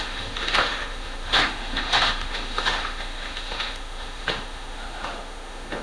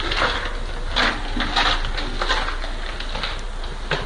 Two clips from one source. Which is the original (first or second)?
second